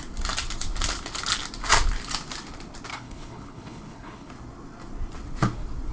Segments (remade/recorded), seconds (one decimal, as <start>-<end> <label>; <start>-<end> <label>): 0.0-2.9 recorded; 2.9-4.3 remade; 4.3-5.9 recorded